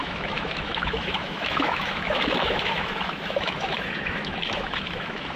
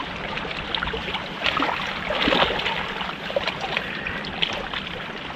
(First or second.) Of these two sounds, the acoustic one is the second